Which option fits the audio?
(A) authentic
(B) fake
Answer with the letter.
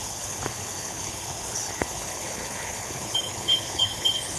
B